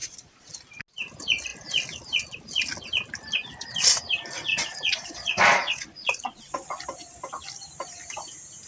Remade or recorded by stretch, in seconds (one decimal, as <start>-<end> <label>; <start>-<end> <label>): 0.0-0.5 remade; 0.5-4.5 recorded; 4.5-6.8 remade; 6.8-8.7 recorded